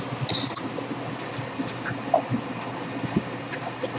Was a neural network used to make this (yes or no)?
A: no